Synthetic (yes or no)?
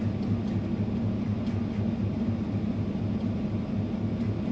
no